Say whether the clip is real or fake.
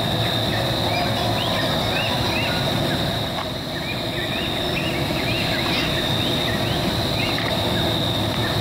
real